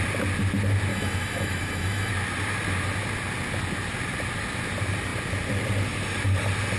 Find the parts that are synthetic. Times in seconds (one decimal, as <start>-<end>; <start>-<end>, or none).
0.9-2.1